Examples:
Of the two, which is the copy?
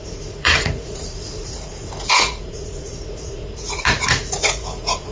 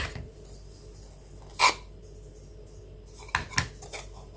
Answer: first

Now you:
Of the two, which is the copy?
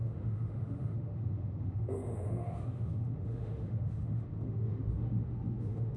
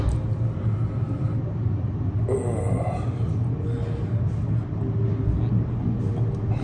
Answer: first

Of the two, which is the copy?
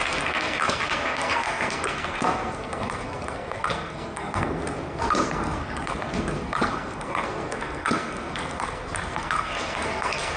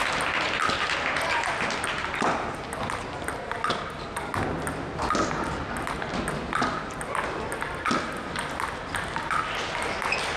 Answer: first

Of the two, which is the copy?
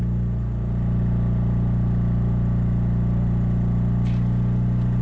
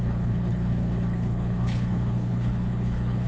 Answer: second